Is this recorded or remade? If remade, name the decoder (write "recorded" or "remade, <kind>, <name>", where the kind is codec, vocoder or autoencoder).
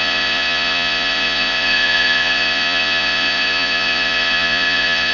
remade, vocoder, Vocos